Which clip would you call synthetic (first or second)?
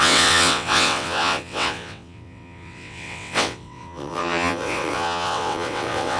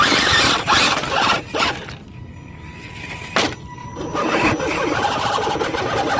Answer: first